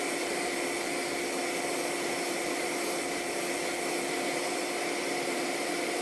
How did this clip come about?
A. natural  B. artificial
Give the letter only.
A